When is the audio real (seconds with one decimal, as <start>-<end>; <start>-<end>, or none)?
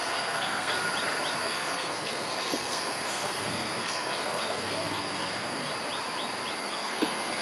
0.7-1.4; 5.7-6.6